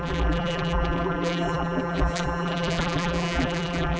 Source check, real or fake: fake